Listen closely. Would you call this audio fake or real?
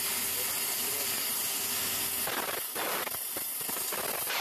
real